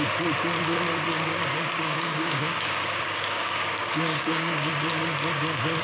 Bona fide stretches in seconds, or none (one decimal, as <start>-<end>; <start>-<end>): 0.0-1.3; 4.7-5.8